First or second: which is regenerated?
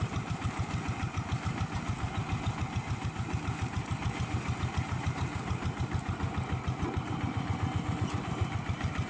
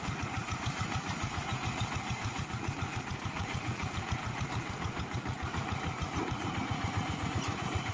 second